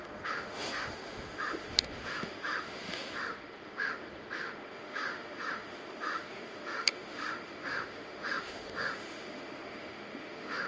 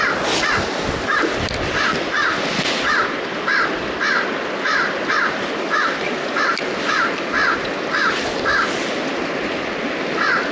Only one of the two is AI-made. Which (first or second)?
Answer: first